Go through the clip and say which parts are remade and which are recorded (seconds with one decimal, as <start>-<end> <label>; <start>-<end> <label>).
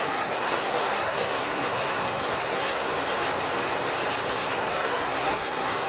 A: 0.0-2.9 remade; 2.9-4.3 recorded; 4.3-5.9 remade